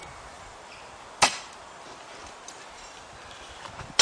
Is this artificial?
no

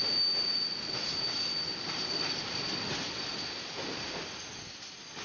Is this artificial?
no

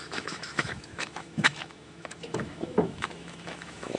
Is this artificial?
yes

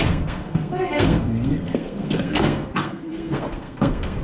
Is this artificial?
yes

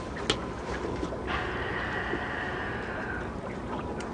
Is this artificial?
no